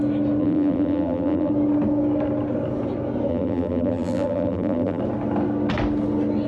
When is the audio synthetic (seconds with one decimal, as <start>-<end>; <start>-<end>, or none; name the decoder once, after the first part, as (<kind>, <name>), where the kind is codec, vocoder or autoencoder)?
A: 0.4-1.5 (vocoder, BigVGAN v2); 3.3-5.0